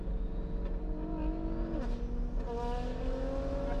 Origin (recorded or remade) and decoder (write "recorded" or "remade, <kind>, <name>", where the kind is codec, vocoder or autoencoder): recorded